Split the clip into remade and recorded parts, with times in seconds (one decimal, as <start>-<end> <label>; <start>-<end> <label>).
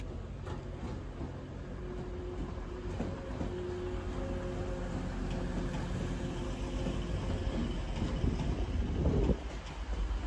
0.0-2.4 recorded; 2.4-3.3 remade; 3.3-10.3 recorded